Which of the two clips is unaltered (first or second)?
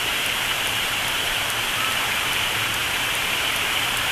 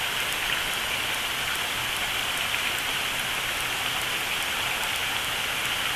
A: second